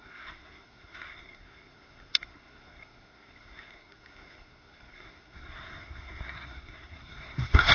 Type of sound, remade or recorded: remade